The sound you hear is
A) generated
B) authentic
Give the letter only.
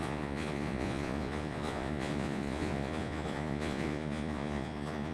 A